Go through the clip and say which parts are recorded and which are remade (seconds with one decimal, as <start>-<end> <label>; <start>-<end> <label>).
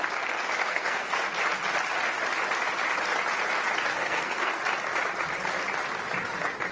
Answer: 0.0-0.6 recorded; 0.6-1.2 remade; 1.2-3.9 recorded; 3.9-4.6 remade; 4.6-6.7 recorded